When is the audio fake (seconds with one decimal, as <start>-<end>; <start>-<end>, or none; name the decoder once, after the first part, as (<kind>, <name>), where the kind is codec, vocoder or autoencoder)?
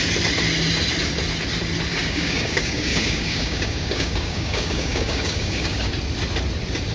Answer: 1.9-5.9 (codec, DAC)